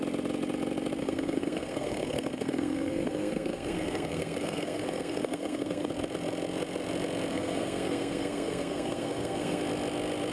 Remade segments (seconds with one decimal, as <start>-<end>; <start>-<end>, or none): 1.0-5.9; 7.3-9.6

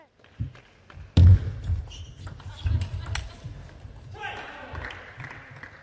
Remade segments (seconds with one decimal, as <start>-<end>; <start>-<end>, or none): none

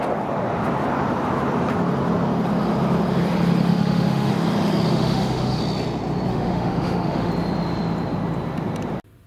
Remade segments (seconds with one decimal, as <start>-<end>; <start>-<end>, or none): 3.7-4.3; 4.9-5.6; 6.3-7.3

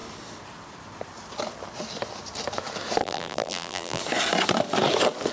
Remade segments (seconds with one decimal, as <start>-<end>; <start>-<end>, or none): 3.0-4.0

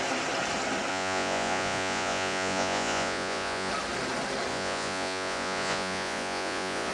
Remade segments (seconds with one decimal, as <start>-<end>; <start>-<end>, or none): 0.9-3.7; 4.5-6.9

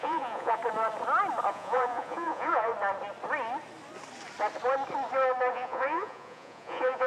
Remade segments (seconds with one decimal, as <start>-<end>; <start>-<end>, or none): 0.0-0.6; 1.5-2.7; 5.5-7.1